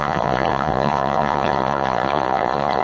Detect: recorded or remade remade